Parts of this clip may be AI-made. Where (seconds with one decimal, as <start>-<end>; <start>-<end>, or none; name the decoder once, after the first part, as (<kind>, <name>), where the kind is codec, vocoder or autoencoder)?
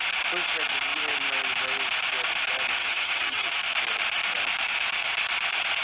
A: 2.8-3.5 (vocoder, HiFi-GAN)